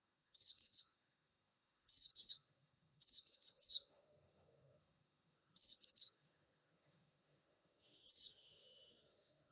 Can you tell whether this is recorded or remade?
remade